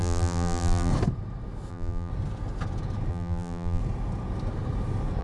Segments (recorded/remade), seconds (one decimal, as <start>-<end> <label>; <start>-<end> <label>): 0.0-0.9 remade; 0.9-1.7 recorded; 1.7-2.1 remade; 2.1-3.1 recorded; 3.1-3.8 remade; 3.8-5.2 recorded